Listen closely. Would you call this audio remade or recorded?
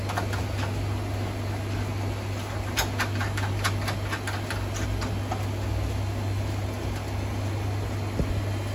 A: recorded